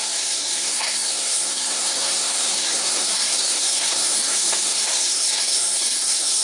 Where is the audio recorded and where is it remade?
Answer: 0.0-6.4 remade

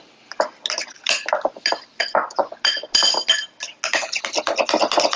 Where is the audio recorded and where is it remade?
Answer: 0.0-5.2 recorded

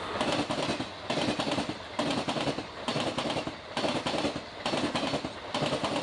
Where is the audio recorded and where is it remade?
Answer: 0.0-6.0 recorded

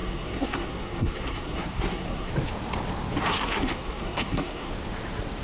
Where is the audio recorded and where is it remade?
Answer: 0.0-2.3 remade; 2.3-3.3 recorded; 3.3-4.7 remade; 4.7-5.4 recorded

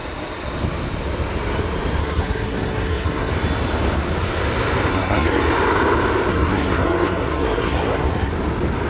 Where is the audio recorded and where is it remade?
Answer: 0.0-2.0 recorded; 2.0-3.3 remade; 3.3-4.9 recorded; 4.9-5.4 remade; 5.4-6.3 recorded; 6.3-8.3 remade; 8.3-8.9 recorded

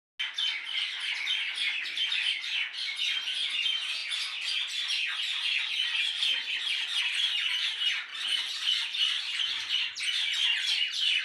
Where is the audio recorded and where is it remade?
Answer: 0.0-11.2 recorded